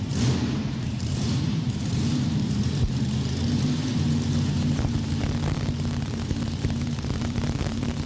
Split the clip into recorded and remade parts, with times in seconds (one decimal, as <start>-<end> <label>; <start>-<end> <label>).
0.0-8.1 remade